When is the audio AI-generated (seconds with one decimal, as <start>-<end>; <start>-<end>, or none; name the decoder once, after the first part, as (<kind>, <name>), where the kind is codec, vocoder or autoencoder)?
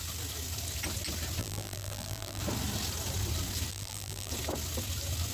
1.4-2.4 (vocoder, BigVGAN v2); 3.7-4.3